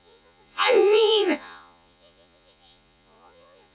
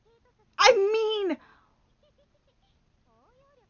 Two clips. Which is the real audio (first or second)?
second